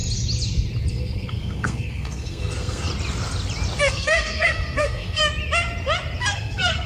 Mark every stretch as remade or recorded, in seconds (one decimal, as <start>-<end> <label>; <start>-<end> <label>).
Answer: 0.0-0.9 recorded; 0.9-2.9 remade; 2.9-3.9 recorded; 3.9-5.2 remade; 5.2-6.2 recorded; 6.2-6.9 remade